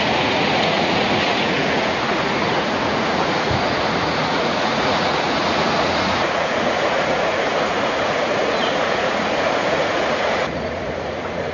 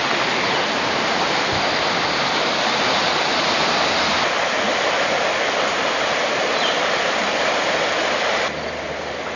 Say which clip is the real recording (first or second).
second